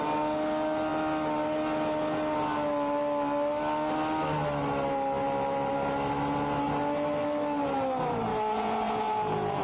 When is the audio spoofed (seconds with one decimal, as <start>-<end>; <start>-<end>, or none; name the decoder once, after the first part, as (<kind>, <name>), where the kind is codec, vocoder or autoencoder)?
8.3-9.6 (vocoder, Vocos)